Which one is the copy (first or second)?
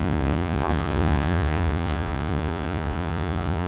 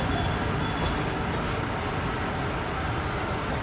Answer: first